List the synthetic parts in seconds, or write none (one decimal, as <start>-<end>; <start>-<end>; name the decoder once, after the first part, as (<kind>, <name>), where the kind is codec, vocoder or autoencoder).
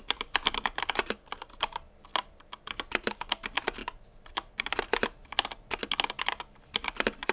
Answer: none